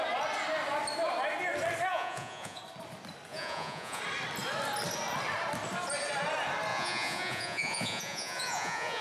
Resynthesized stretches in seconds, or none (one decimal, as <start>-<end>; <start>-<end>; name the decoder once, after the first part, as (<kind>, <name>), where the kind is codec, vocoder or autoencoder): 1.9-2.6 (vocoder, Vocos); 3.3-4.0; 6.7-9.0